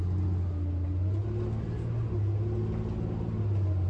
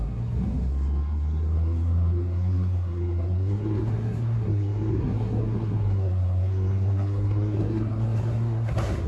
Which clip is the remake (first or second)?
second